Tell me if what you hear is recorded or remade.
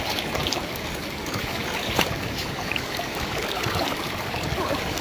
remade